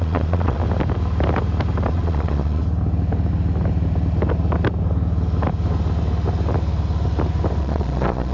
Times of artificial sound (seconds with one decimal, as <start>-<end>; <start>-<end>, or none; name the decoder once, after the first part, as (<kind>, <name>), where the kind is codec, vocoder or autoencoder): 0.0-0.6 (vocoder, Vocos); 1.9-2.6; 7.6-8.3